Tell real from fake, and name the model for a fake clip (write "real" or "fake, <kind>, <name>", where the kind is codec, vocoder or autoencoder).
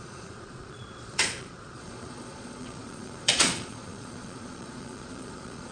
fake, vocoder, Vocos